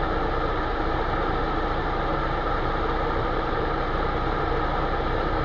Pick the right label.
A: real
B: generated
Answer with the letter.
B